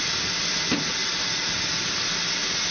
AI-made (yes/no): no